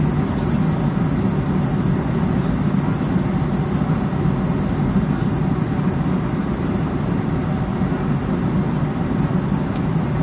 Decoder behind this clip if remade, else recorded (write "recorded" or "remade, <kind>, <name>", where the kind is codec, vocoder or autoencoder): recorded